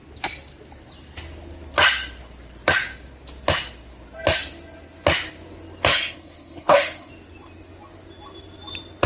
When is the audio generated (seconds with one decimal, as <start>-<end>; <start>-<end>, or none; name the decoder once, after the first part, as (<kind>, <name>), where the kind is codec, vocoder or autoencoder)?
5.9-7.1 (codec, HILCodec)